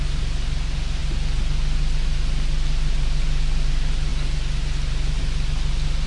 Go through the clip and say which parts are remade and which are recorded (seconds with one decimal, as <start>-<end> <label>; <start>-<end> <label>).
0.0-6.1 recorded